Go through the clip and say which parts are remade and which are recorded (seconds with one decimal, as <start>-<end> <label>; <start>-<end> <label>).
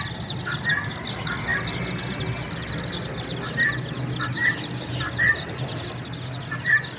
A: 0.0-7.0 recorded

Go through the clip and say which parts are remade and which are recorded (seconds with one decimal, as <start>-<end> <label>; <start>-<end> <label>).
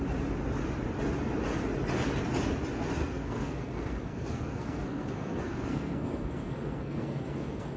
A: 0.0-3.0 recorded; 3.0-7.8 remade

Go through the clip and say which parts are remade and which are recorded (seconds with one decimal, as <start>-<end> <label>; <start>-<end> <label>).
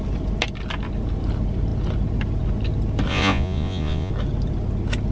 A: 0.0-3.1 recorded; 3.1-4.1 remade; 4.1-5.1 recorded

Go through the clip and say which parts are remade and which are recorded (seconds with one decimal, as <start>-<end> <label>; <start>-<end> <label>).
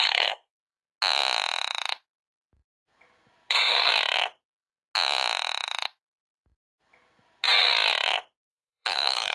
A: 0.0-0.6 remade; 0.6-3.5 recorded; 3.5-3.9 remade; 3.9-8.4 recorded; 8.4-9.3 remade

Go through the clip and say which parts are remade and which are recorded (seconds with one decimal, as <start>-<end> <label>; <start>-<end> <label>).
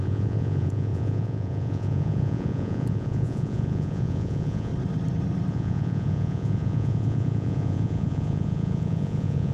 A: 0.0-4.7 remade; 4.7-5.5 recorded; 5.5-9.5 remade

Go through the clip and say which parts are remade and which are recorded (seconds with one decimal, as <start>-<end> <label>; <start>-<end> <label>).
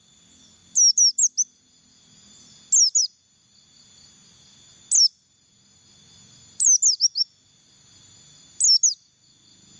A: 0.0-9.8 recorded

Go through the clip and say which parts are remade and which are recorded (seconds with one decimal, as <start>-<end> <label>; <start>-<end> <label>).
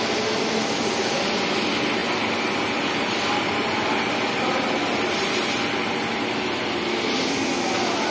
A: 0.0-8.1 recorded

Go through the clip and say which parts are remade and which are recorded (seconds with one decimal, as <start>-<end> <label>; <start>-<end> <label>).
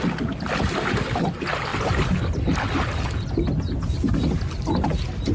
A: 0.0-5.3 recorded